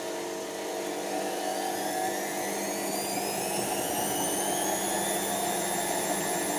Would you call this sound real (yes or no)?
yes